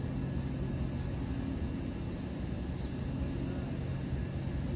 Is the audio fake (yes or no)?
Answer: no